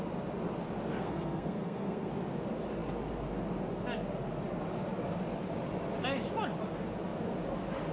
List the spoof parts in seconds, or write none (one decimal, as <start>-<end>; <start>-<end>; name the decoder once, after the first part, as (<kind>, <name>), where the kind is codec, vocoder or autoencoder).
1.0-2.1 (codec, SNAC)

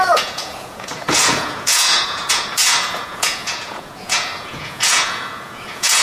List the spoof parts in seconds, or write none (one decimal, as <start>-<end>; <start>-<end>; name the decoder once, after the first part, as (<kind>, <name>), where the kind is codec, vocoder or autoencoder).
0.0-6.0 (vocoder, Vocos)

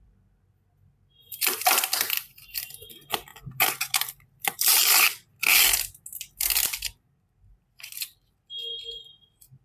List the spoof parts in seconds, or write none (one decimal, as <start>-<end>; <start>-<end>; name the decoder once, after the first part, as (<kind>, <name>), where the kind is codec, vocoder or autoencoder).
0.0-3.3 (vocoder, BigVGAN v2); 4.0-4.7; 7.1-9.6